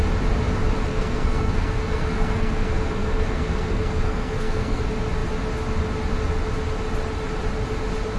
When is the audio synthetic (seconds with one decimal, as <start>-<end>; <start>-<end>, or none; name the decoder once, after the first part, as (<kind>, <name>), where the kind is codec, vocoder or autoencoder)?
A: 0.9-4.8 (codec, SNAC)